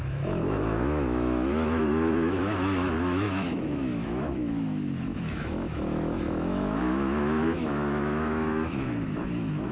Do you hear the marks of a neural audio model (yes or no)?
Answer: yes